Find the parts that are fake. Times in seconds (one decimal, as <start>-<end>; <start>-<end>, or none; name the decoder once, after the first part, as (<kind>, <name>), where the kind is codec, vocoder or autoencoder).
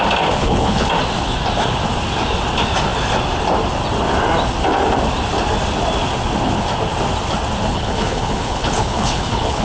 0.4-0.9 (codec, HILCodec); 7.7-9.6